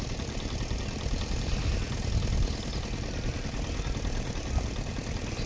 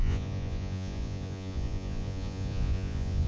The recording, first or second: first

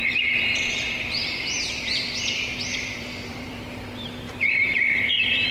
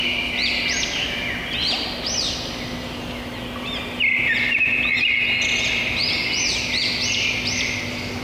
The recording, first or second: second